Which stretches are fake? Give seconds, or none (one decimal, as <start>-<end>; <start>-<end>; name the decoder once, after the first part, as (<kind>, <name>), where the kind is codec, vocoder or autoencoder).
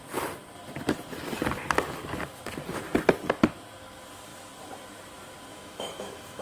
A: 5.5-6.4 (autoencoder, DAC-VAE)